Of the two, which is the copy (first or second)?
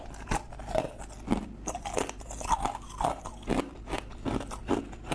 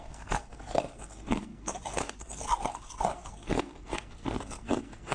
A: second